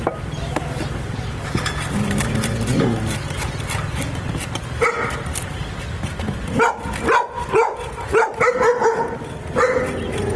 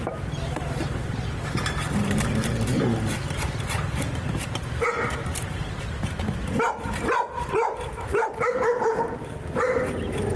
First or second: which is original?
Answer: first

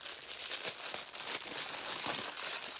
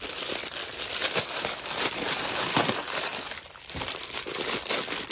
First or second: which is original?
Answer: first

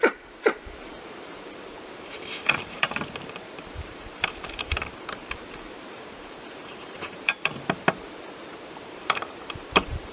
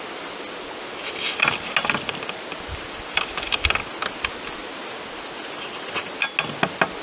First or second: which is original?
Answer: second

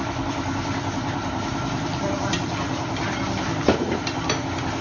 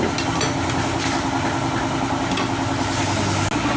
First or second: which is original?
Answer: second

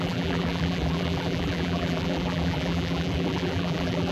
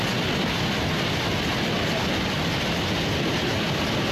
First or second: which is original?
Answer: second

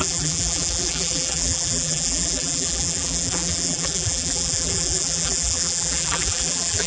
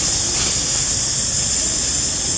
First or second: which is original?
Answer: second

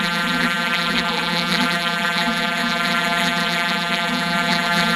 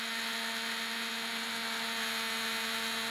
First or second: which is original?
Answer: second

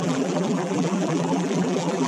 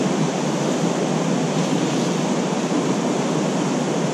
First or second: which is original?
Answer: second